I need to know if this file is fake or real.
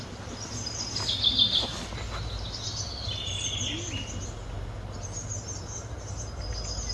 real